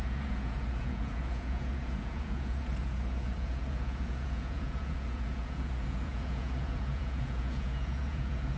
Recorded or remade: remade